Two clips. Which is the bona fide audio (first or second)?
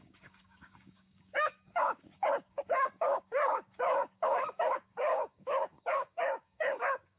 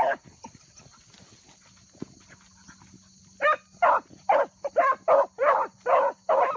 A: second